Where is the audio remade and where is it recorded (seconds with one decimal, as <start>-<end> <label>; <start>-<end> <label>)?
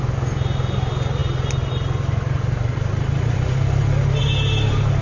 0.0-5.0 recorded